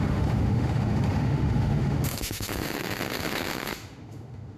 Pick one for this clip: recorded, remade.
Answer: remade